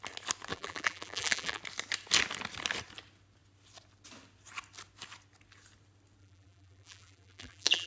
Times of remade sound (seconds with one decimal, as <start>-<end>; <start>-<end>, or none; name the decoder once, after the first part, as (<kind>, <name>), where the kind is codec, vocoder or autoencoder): 0.5-1.6 (vocoder, BigVGAN v2); 6.2-7.9